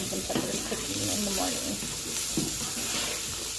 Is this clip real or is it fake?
real